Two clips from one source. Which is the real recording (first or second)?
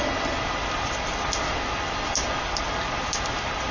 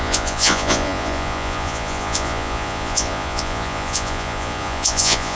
first